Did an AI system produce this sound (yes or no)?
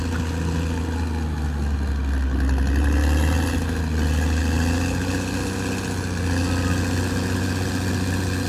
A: no